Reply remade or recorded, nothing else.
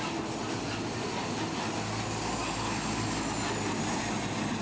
recorded